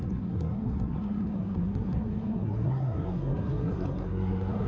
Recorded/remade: remade